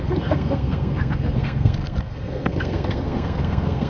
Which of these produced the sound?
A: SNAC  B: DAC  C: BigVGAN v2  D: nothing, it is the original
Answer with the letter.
A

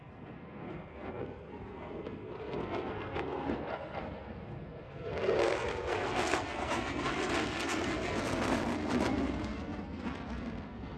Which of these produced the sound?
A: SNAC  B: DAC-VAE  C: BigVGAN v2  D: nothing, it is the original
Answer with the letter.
A